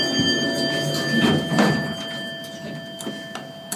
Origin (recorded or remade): recorded